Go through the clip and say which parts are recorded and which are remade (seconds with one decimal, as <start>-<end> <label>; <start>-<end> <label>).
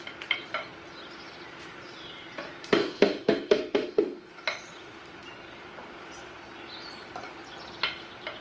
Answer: 0.0-2.8 recorded; 2.8-4.3 remade; 4.3-8.4 recorded